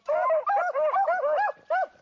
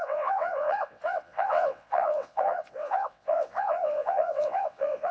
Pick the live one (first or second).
first